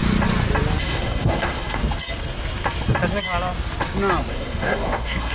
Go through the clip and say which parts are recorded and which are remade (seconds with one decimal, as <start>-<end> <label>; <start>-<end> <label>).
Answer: 0.0-0.8 recorded; 0.8-1.8 remade; 1.8-4.3 recorded; 4.3-5.3 remade